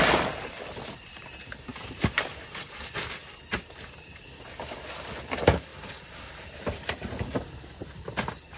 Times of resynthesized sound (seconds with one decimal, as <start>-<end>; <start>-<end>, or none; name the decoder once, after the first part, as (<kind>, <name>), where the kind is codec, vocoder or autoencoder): 5.7-7.1 (vocoder, BigVGAN v2)